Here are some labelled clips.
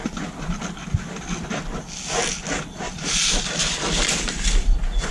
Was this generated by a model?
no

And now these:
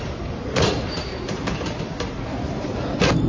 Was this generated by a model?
yes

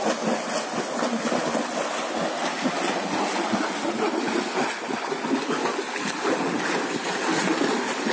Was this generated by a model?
no